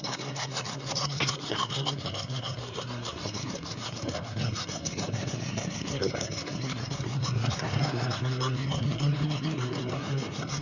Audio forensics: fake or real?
fake